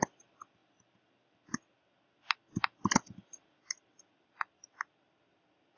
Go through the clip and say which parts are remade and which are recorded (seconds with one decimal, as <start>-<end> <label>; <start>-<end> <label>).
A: 0.0-5.8 recorded